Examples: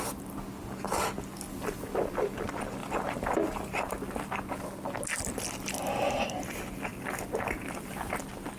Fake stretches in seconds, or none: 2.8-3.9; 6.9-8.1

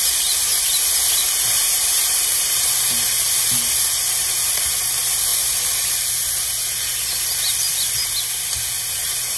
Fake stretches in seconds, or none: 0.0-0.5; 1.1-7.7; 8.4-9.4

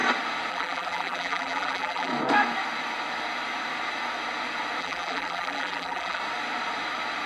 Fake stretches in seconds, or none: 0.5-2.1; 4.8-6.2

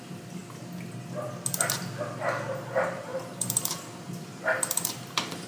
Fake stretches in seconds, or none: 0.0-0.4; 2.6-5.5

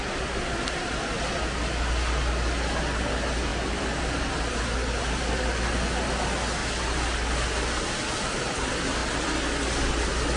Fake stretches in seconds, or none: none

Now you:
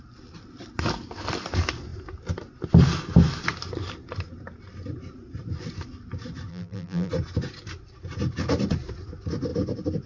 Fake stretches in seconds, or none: 6.5-7.1

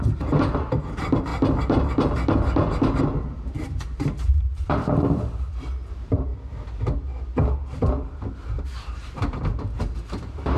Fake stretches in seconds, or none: 0.0-1.3; 3.0-6.3; 8.6-10.6